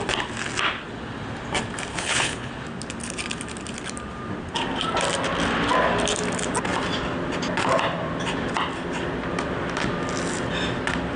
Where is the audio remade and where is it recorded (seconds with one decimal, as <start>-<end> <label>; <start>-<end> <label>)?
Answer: 0.0-1.9 recorded; 1.9-2.5 remade; 2.5-11.2 recorded

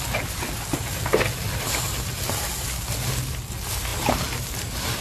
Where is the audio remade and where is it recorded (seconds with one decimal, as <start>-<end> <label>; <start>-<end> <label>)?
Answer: 0.0-5.0 recorded

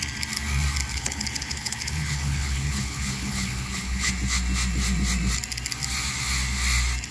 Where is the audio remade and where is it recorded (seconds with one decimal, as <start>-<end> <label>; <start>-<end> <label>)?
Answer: 0.0-0.9 recorded; 0.9-4.1 remade; 4.1-7.1 recorded

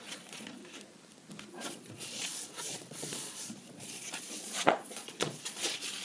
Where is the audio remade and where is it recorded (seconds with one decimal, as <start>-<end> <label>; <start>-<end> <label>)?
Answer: 0.0-0.6 remade; 0.6-1.5 recorded; 1.5-6.0 remade